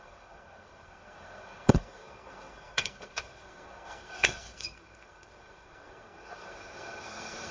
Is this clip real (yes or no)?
no